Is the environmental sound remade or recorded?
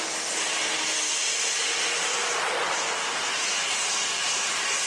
recorded